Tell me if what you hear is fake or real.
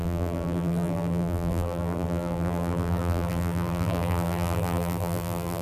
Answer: fake